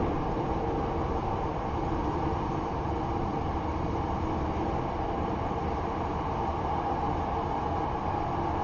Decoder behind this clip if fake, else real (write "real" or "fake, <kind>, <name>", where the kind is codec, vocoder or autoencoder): real